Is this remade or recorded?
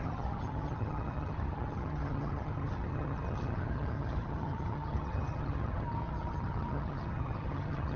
remade